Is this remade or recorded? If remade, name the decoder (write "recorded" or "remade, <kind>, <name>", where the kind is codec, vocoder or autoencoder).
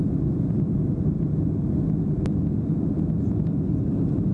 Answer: recorded